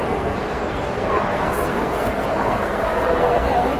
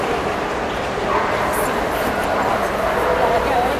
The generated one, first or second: first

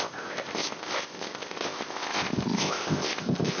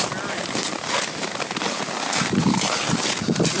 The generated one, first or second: first